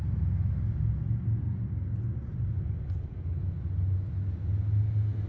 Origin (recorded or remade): recorded